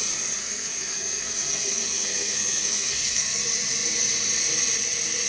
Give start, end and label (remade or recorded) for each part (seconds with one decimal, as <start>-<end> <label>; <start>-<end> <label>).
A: 0.0-0.4 recorded; 0.4-3.4 remade; 3.4-5.3 recorded